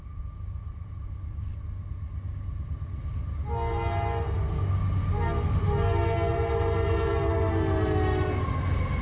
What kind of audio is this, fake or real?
real